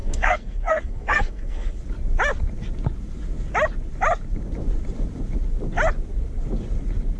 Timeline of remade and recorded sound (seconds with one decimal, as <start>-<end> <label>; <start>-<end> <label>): 0.0-1.8 remade; 1.8-7.2 recorded